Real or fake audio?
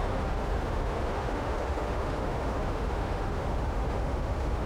fake